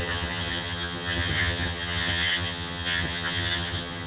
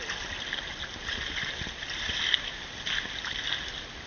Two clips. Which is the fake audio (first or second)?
first